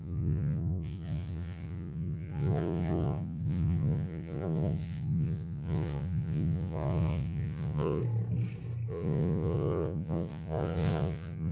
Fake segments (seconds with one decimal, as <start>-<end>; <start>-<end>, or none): 0.0-8.0; 8.9-11.5